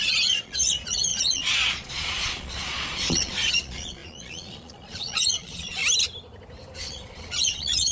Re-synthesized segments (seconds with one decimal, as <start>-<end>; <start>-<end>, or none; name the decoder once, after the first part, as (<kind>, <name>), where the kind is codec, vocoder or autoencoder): 0.0-5.8 (vocoder, Vocos); 6.8-7.9